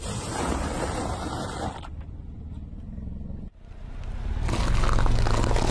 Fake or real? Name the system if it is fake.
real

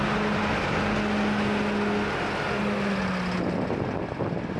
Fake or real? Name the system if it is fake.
real